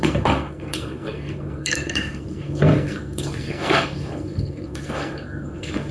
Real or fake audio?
fake